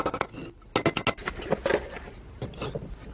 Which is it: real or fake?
real